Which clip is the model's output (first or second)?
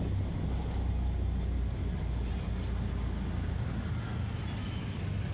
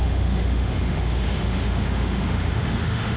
second